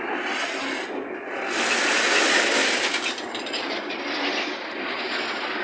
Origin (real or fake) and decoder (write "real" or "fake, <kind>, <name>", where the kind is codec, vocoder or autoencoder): real